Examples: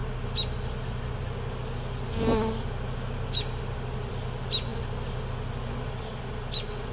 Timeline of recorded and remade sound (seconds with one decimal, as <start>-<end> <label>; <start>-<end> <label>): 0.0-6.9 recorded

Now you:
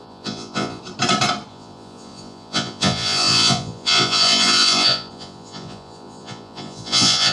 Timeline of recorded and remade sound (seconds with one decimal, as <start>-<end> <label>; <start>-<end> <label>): 0.0-0.8 remade; 0.8-1.5 recorded; 1.5-7.3 remade

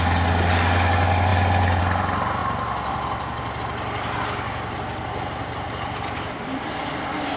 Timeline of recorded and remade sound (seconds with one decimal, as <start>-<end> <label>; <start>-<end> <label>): 0.0-7.4 recorded

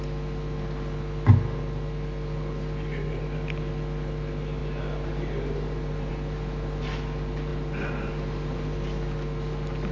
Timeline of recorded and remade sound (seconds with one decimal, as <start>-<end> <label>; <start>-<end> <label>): 0.0-9.9 recorded

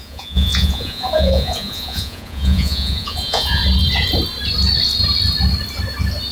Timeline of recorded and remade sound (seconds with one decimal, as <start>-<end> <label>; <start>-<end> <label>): 0.0-3.6 remade; 3.6-6.3 recorded

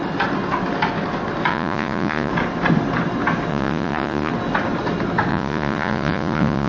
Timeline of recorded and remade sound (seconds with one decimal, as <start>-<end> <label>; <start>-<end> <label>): 0.0-1.5 recorded; 1.5-2.3 remade; 2.3-3.5 recorded; 3.5-4.3 remade; 4.3-5.3 recorded; 5.3-6.7 remade

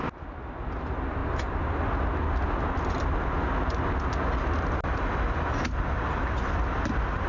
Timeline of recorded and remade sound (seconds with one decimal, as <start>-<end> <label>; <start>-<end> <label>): 0.0-7.3 recorded